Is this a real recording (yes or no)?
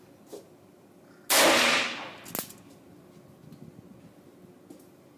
yes